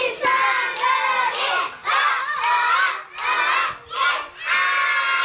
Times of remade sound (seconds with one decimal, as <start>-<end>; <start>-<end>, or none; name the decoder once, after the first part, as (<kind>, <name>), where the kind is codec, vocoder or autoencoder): none